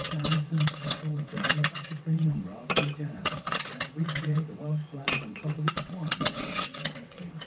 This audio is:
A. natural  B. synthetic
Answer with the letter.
B